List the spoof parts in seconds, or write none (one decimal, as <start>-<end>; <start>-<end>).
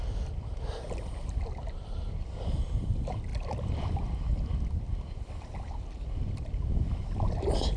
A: none